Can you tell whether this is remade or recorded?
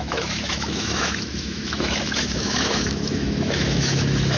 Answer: remade